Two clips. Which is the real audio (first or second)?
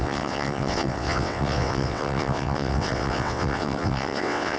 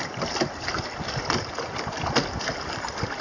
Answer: second